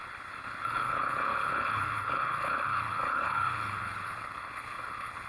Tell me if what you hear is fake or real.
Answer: fake